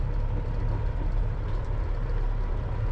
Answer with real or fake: real